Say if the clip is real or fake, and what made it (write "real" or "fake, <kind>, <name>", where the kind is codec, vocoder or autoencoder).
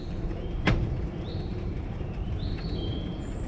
fake, vocoder, BigVGAN v2